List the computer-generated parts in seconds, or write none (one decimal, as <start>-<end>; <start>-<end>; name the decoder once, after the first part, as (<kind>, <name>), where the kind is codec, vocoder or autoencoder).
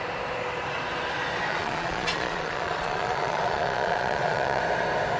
1.5-4.6 (vocoder, Vocos)